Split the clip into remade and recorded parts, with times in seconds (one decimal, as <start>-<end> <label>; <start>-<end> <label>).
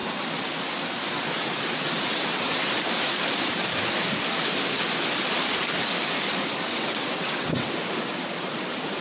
0.0-2.1 recorded; 2.1-2.7 remade; 2.7-6.7 recorded; 6.7-7.7 remade; 7.7-9.0 recorded